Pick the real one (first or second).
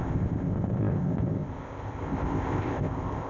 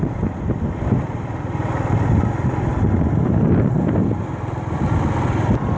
second